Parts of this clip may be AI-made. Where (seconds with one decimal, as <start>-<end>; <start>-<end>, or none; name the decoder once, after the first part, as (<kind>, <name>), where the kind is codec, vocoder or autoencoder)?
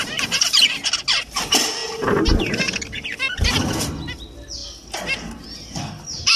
none